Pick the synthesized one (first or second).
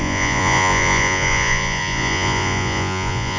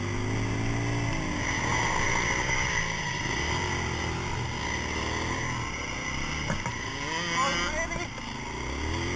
first